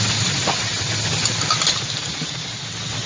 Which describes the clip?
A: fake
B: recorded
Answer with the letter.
B